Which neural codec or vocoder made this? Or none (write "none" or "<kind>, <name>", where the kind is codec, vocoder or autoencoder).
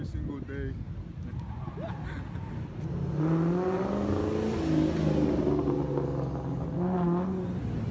none